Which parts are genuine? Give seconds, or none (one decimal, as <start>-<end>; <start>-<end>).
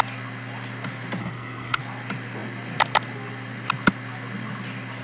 0.0-1.2; 1.8-5.0